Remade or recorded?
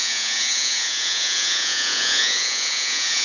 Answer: remade